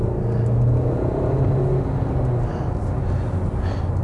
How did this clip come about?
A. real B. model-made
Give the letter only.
A